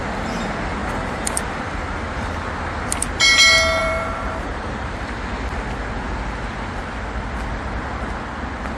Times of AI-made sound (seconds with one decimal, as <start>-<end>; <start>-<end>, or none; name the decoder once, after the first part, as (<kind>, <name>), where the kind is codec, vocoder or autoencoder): 0.8-1.5 (vocoder, BigVGAN v2); 3.8-4.9

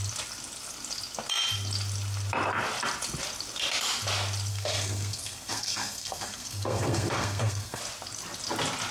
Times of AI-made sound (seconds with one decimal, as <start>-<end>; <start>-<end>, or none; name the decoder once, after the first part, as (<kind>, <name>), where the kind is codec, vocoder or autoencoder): 4.5-7.8 (codec, SNAC)

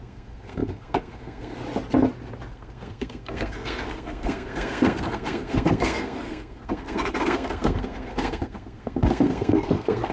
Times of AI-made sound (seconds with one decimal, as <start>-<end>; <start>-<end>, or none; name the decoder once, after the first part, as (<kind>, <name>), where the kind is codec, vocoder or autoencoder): 0.0-1.6 (codec, SNAC); 2.5-10.1

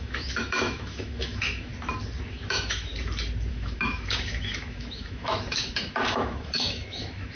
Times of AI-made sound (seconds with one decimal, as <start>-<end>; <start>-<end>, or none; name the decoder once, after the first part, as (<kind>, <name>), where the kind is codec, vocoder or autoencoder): 0.0-1.7 (autoencoder, DAC-VAE); 2.3-2.9; 3.5-7.4

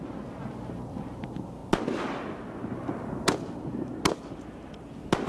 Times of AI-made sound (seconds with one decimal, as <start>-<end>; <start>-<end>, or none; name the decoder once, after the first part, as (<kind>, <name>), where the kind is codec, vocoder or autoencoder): none

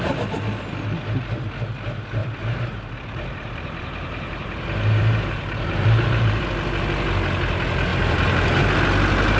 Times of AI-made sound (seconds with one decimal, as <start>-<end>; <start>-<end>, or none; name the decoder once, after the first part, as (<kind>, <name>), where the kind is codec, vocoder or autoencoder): 2.2-6.4 (vocoder, BigVGAN v2); 7.9-8.6

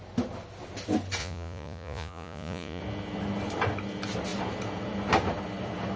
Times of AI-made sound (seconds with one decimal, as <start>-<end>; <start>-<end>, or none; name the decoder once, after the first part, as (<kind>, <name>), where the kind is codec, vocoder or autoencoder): 1.2-2.8 (vocoder, Vocos)